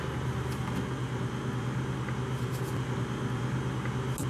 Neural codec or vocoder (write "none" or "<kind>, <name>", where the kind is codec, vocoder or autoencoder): none